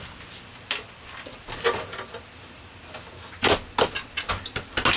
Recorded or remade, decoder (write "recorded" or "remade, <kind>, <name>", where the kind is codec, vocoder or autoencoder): recorded